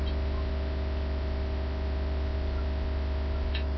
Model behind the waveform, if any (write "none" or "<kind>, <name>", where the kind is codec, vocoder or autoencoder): none